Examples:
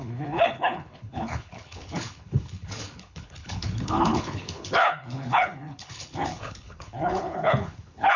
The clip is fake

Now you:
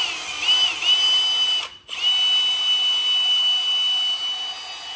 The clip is real